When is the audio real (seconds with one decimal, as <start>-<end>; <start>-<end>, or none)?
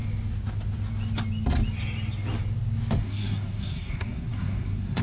0.0-3.0